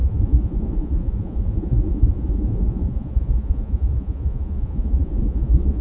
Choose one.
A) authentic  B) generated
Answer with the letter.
B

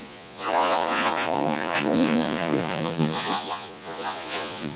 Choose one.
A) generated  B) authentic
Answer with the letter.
A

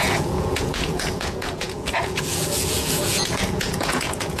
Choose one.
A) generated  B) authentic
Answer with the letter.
A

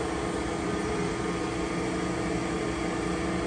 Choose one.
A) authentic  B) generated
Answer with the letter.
A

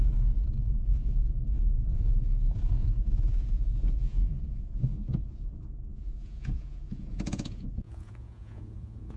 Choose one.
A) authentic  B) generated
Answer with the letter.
B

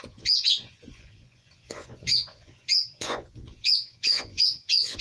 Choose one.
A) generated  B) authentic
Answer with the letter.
A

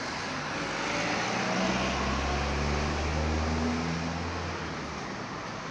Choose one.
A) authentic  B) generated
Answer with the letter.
A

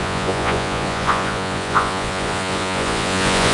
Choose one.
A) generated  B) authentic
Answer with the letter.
A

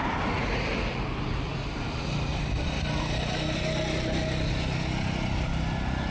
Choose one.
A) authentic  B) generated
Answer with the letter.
A